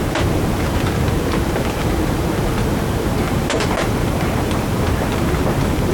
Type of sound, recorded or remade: remade